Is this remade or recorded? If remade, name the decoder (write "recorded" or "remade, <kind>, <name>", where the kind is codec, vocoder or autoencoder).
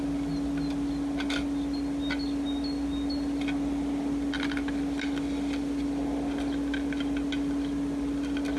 recorded